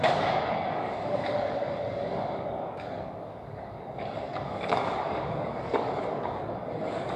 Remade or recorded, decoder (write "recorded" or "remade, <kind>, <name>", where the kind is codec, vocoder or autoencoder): remade, codec, DAC